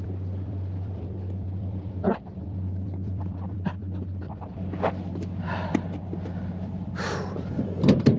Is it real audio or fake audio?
fake